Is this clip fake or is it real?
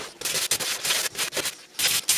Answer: real